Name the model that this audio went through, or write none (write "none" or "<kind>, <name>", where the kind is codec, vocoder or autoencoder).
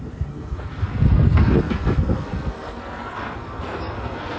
codec, SNAC